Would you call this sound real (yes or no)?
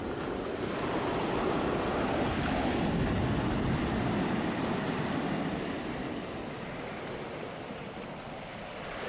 yes